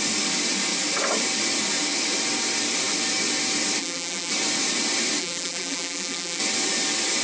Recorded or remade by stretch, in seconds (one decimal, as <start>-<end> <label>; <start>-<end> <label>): 0.0-3.8 recorded; 3.8-4.3 remade; 4.3-5.2 recorded; 5.2-6.4 remade; 6.4-7.2 recorded